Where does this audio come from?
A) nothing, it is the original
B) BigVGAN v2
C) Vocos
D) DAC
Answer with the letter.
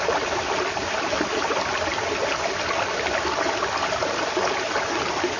A